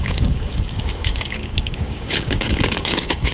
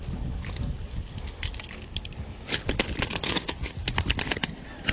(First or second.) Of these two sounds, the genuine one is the second